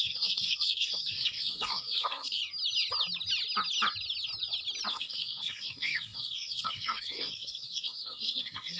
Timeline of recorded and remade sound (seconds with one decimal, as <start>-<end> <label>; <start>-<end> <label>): 0.0-2.4 remade; 2.4-4.9 recorded; 4.9-8.8 remade